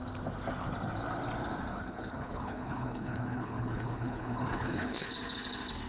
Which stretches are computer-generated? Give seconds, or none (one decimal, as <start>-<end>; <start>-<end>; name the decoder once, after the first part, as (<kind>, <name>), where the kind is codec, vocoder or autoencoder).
1.7-5.1 (codec, HILCodec)